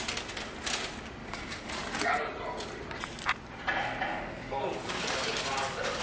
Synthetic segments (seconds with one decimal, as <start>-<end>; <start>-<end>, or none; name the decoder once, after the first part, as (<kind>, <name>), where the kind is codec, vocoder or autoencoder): 1.2-2.3 (codec, DAC); 4.1-6.0